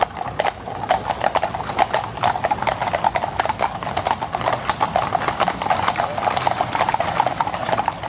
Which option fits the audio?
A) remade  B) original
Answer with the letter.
B